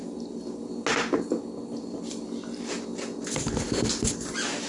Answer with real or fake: real